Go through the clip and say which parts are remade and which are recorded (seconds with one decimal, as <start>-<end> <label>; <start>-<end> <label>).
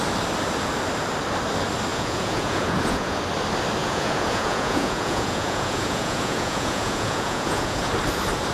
0.0-1.9 recorded; 1.9-3.2 remade; 3.2-3.8 recorded; 3.8-7.9 remade; 7.9-8.5 recorded